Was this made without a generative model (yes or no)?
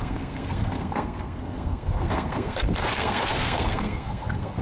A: no